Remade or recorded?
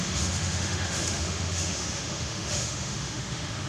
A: remade